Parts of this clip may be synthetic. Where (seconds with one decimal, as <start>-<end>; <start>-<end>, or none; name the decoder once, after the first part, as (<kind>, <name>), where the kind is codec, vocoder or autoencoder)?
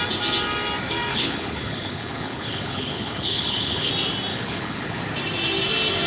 1.1-3.9 (codec, HILCodec); 4.3-5.0